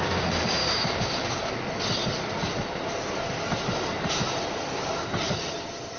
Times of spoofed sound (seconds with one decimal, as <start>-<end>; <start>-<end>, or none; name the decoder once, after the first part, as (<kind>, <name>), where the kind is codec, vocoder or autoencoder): 0.6-1.5 (codec, DAC)